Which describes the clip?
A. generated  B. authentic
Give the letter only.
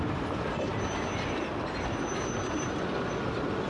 B